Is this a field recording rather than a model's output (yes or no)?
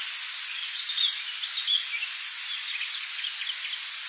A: yes